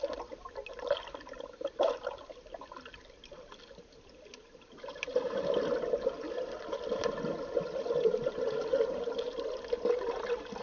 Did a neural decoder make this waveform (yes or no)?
no